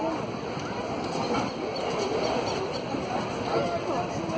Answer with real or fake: real